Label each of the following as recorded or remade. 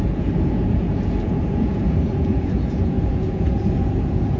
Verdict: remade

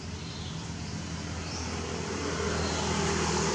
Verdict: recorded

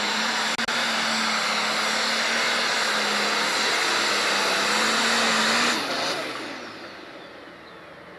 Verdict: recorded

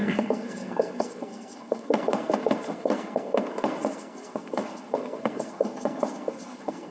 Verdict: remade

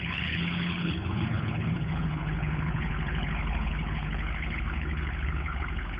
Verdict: remade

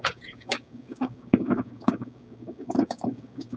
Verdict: remade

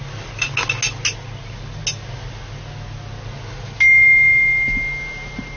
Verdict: recorded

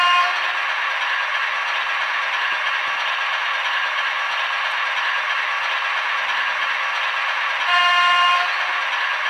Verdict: recorded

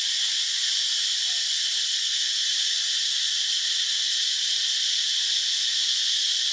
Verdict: recorded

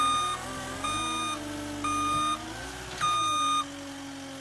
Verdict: recorded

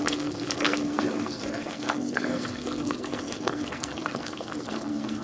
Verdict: remade